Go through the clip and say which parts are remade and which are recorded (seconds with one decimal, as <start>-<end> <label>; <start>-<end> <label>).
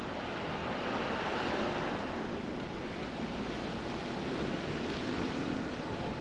0.0-0.6 remade; 0.6-2.1 recorded; 2.1-3.6 remade; 3.6-5.8 recorded; 5.8-6.2 remade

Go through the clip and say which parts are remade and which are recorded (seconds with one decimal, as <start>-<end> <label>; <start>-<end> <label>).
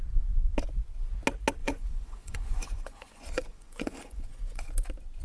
0.0-1.6 recorded; 1.6-4.7 remade; 4.7-5.2 recorded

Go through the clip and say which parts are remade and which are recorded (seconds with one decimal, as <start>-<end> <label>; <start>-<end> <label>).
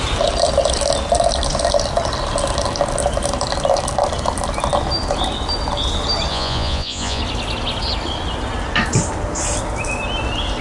0.0-6.3 recorded; 6.3-7.2 remade; 7.2-10.6 recorded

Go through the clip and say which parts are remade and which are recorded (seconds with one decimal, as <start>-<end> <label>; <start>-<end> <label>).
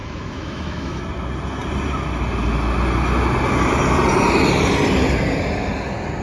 0.0-1.0 remade; 1.0-6.2 recorded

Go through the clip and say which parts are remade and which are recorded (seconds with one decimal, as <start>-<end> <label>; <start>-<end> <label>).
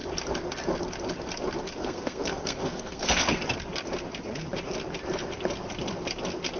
0.0-1.8 recorded; 1.8-3.4 remade; 3.4-6.6 recorded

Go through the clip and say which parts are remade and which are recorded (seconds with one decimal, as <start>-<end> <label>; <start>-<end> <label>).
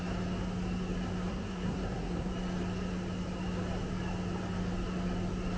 0.0-1.3 recorded; 1.3-2.3 remade; 2.3-5.6 recorded